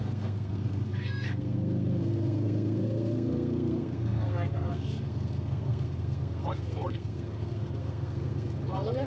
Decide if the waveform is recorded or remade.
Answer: remade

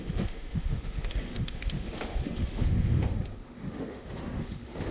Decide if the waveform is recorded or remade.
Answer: remade